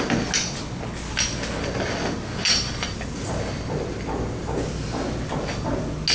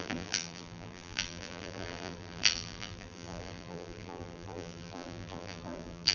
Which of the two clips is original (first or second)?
first